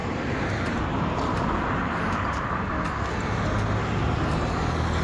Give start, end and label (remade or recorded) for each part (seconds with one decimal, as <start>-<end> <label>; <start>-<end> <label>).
0.0-1.2 remade; 1.2-1.8 recorded; 1.8-2.7 remade; 2.7-5.0 recorded